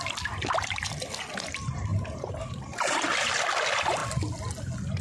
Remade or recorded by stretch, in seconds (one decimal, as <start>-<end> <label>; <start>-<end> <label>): 0.0-1.9 recorded; 1.9-3.4 remade; 3.4-5.0 recorded